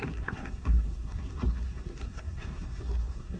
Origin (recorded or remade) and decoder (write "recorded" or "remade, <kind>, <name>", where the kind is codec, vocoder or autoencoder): remade, codec, SNAC